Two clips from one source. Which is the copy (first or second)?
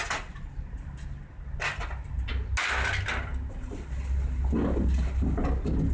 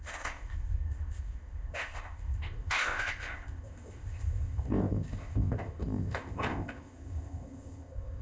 second